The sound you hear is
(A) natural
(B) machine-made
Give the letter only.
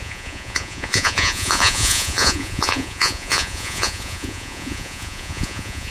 B